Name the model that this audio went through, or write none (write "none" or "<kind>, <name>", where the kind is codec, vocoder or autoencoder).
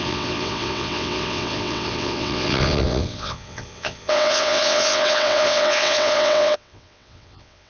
vocoder, WaveNeXt